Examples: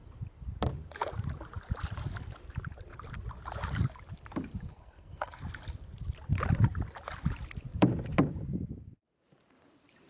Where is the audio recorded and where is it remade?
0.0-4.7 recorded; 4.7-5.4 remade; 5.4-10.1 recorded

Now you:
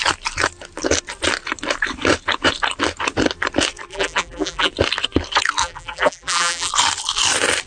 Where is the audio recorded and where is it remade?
0.0-3.9 recorded; 3.9-4.7 remade; 4.7-5.6 recorded; 5.6-6.7 remade; 6.7-7.7 recorded

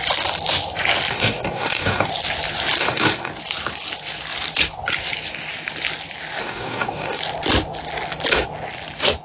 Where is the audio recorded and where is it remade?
0.0-1.1 recorded; 1.1-2.1 remade; 2.1-2.8 recorded; 2.8-3.3 remade; 3.3-6.4 recorded; 6.4-7.2 remade; 7.2-9.2 recorded

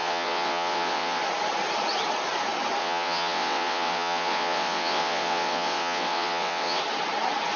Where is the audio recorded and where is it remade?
0.0-1.2 remade; 1.2-2.8 recorded; 2.8-6.8 remade; 6.8-7.6 recorded